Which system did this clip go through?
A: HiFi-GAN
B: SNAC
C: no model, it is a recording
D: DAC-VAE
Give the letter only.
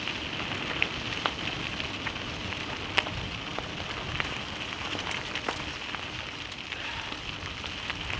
C